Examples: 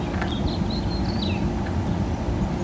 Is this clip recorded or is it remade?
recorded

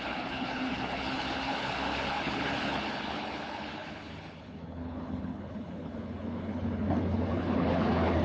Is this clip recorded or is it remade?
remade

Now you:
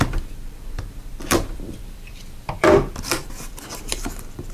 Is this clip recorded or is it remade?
remade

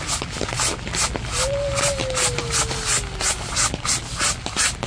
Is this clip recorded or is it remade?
recorded